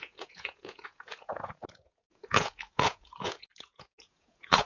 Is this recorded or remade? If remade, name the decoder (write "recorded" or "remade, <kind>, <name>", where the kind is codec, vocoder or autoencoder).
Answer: remade, vocoder, Vocos